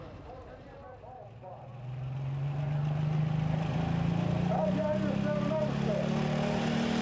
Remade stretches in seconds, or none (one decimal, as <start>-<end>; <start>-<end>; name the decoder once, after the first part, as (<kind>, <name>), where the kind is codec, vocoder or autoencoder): none